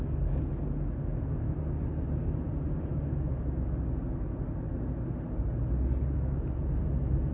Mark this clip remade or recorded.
recorded